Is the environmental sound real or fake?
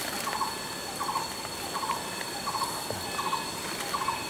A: real